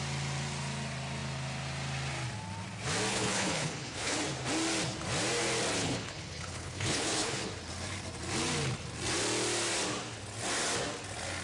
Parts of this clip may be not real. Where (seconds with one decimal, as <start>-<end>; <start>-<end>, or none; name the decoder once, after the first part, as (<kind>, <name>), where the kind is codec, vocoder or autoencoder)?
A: 3.1-4.2 (codec, HILCodec); 5.8-7.5